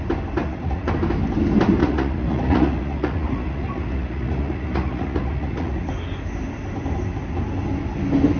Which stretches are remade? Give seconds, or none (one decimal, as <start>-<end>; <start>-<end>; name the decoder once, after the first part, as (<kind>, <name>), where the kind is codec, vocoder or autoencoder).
0.4-0.9 (vocoder, Vocos); 1.8-5.9